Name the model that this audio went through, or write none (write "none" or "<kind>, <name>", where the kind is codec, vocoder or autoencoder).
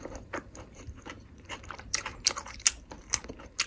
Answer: vocoder, BigVGAN v2